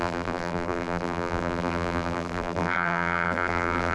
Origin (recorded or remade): remade